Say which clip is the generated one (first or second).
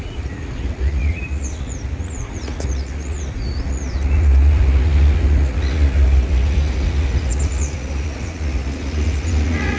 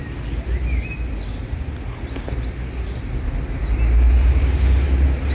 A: first